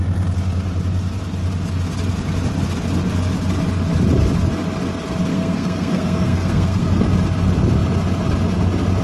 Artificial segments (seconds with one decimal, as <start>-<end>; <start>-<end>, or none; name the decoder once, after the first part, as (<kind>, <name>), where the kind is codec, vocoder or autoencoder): 5.3-7.0 (codec, SNAC)